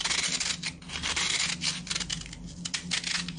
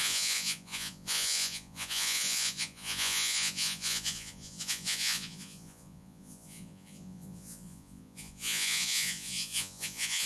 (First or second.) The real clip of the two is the first